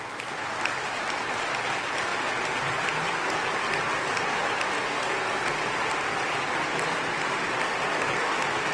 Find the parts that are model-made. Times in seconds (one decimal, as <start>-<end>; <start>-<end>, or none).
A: none

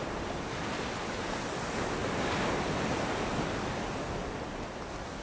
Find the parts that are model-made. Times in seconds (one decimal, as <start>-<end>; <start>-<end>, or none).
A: none